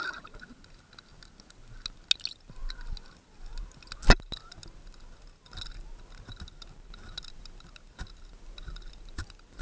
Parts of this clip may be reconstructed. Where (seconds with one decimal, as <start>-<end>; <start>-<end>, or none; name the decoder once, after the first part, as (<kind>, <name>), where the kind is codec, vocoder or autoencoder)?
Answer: none